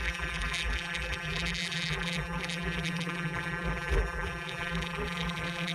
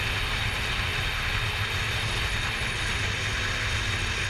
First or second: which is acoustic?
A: second